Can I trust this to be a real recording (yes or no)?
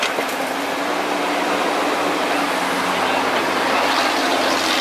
yes